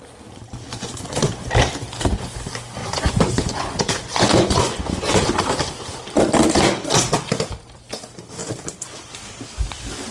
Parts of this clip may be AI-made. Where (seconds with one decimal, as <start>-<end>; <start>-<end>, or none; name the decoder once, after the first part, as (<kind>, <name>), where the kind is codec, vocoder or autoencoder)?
0.7-1.5 (vocoder, Vocos); 2.8-5.2; 8.4-8.9